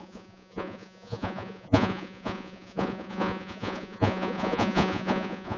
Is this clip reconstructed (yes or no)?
yes